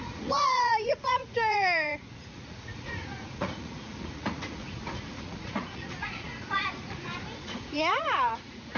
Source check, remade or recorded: remade